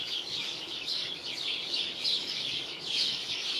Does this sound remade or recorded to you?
remade